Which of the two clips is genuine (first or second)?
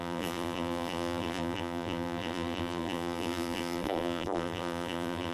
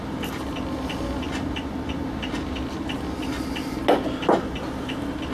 second